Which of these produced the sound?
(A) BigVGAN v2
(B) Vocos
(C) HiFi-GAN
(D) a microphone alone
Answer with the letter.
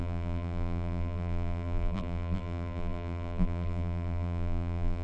A